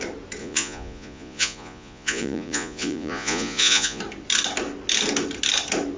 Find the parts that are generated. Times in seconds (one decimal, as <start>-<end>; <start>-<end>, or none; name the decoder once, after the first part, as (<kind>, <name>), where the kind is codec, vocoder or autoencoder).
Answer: 0.4-4.0 (vocoder, Vocos)